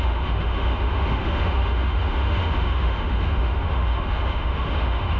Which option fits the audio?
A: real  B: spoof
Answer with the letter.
B